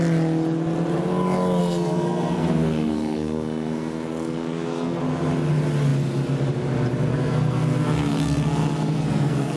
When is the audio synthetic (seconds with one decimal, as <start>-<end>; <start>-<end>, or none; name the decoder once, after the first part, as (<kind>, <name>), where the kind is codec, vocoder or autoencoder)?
1.6-5.0 (codec, SNAC); 7.1-9.6